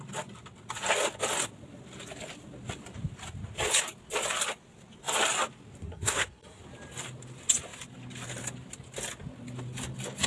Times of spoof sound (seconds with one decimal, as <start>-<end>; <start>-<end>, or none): 5.8-6.6

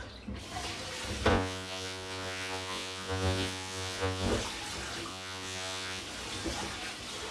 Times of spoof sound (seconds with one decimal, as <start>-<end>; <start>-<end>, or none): 1.3-4.3; 5.1-6.0